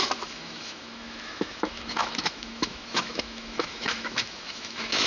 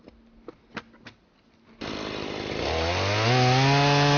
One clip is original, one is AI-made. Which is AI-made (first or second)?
first